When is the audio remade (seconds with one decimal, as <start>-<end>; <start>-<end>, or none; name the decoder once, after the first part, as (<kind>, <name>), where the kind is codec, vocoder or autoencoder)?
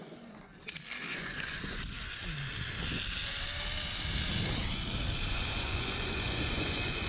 0.0-0.5 (vocoder, Vocos); 1.1-2.2; 5.2-7.1